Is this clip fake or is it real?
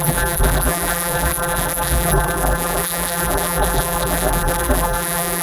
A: fake